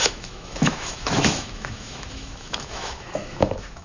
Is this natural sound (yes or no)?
no